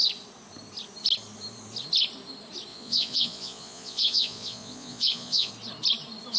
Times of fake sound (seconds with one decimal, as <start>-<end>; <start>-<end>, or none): 2.7-5.5